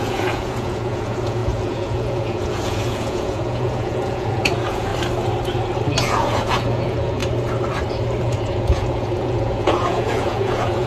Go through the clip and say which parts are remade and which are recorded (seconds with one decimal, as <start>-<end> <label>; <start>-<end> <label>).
0.0-4.9 remade; 4.9-6.0 recorded; 6.0-7.2 remade; 7.2-8.2 recorded; 8.2-10.9 remade